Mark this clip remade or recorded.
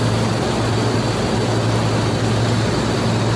recorded